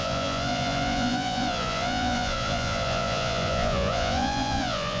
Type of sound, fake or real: fake